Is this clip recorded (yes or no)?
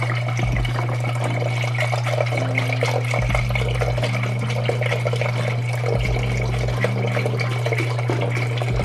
yes